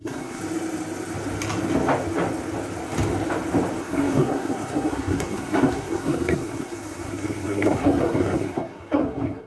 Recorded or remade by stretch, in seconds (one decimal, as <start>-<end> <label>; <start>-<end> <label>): 0.0-0.4 remade; 0.4-3.8 recorded; 3.8-9.5 remade